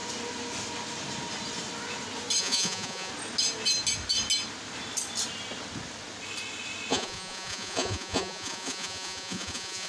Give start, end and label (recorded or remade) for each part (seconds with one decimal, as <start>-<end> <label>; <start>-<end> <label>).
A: 0.0-2.4 recorded; 2.4-3.1 remade; 3.1-6.9 recorded; 6.9-9.9 remade